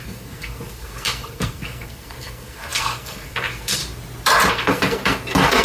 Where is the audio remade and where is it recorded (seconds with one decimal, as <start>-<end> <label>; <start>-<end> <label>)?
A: 0.0-3.8 remade; 3.8-4.5 recorded; 4.5-5.6 remade